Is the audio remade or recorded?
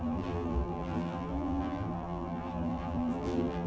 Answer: remade